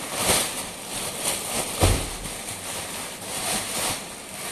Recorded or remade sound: remade